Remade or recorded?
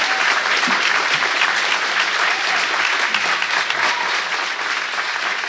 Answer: recorded